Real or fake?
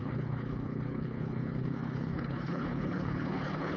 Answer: fake